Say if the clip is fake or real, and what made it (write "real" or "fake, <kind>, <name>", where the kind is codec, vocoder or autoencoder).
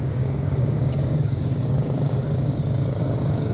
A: fake, codec, DAC